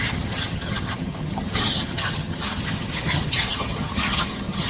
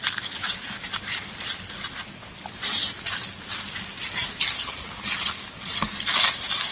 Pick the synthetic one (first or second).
first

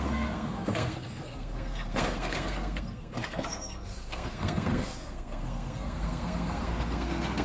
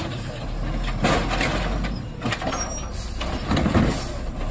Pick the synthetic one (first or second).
first